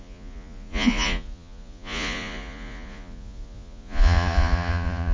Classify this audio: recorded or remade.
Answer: remade